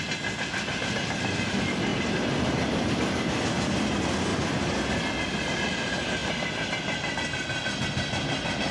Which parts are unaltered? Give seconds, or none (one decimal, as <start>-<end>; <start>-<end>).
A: 0.0-1.9; 3.1-4.3; 4.9-6.2; 7.1-8.7

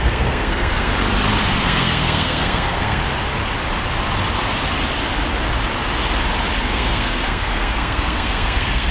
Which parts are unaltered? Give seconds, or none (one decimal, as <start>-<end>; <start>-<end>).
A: 0.9-1.5; 3.0-6.6

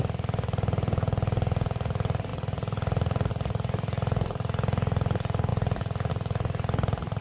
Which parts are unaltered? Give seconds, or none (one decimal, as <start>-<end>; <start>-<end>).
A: 0.0-7.2

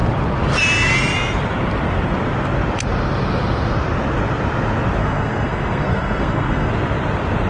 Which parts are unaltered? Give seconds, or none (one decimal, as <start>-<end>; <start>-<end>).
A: 0.0-5.0; 6.7-7.5

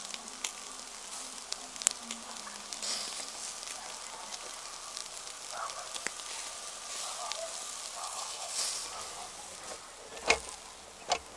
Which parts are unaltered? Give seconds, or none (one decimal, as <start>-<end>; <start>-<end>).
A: 0.0-8.0; 8.6-11.4